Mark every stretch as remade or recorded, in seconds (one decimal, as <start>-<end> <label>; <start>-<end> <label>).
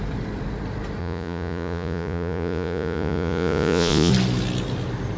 0.0-1.0 recorded; 1.0-4.1 remade; 4.1-5.2 recorded